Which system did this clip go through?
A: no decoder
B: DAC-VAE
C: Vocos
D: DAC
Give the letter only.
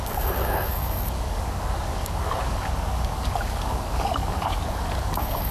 D